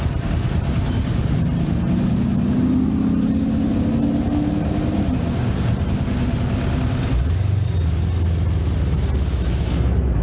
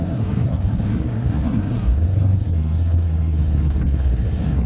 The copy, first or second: second